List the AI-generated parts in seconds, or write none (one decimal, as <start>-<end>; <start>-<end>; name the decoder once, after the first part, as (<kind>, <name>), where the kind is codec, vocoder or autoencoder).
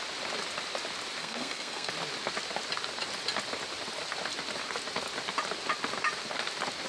1.2-1.9 (codec, SNAC)